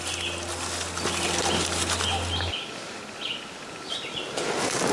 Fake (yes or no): no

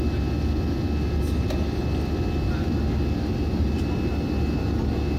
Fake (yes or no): no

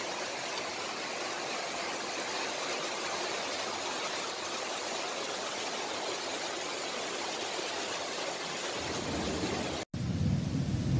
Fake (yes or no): no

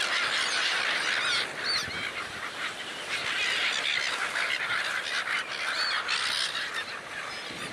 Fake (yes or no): no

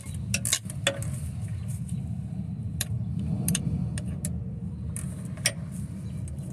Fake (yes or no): no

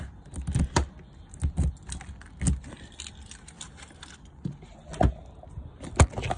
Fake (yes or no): no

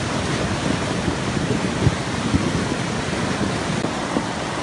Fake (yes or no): no